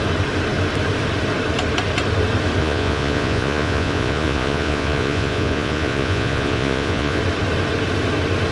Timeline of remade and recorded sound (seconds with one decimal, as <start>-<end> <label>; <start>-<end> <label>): 0.0-2.6 recorded; 2.6-7.2 remade; 7.2-8.5 recorded